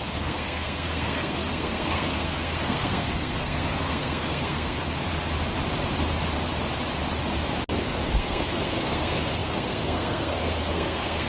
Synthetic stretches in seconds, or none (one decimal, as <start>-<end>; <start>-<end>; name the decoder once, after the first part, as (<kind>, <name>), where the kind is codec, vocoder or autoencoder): 0.0-5.1 (codec, SNAC); 7.8-11.3